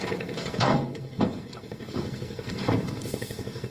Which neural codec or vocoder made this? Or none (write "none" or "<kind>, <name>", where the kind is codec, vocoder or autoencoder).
codec, SNAC